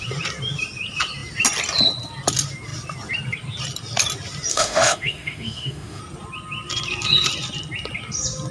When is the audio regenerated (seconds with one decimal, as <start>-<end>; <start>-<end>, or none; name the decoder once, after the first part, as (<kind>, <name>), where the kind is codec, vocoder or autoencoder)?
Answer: 4.5-6.0 (autoencoder, DAC-VAE)

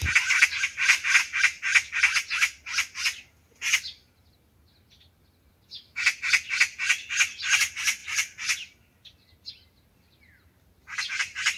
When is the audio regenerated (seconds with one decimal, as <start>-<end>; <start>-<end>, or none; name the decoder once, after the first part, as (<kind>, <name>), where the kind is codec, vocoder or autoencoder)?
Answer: 0.0-1.7 (vocoder, BigVGAN v2); 5.5-11.6

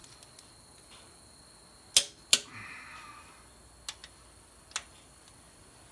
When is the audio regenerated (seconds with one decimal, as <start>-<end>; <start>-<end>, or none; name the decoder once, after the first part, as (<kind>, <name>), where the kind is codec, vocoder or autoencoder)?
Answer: none

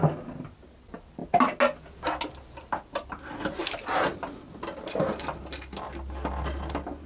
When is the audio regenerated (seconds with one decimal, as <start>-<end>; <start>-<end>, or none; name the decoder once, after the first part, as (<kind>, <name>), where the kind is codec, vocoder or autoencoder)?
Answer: none

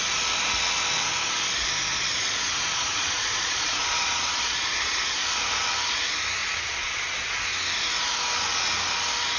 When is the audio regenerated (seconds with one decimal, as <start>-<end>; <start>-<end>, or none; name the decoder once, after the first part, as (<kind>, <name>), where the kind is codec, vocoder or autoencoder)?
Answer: 1.9-5.0 (vocoder, Vocos); 6.4-7.3